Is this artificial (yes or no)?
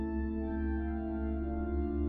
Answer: no